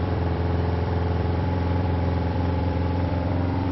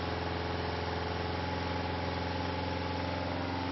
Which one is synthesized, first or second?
first